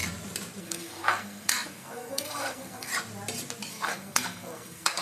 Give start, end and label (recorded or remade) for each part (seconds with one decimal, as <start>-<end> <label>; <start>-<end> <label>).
0.0-0.6 recorded; 0.6-2.9 remade; 2.9-3.7 recorded; 3.7-5.0 remade